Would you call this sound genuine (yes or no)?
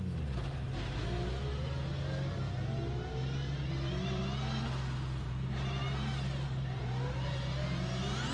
yes